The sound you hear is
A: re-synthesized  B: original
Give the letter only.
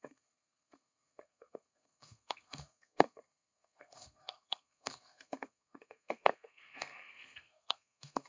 A